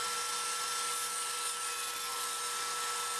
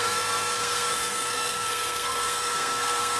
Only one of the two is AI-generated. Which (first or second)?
second